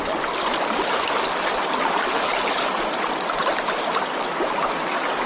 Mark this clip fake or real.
real